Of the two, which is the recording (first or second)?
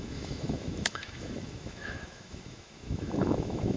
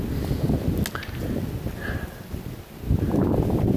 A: second